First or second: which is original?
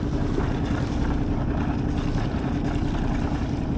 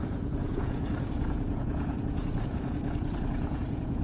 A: first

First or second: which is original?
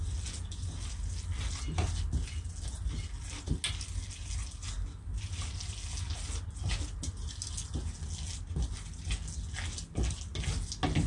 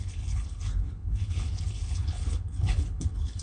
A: first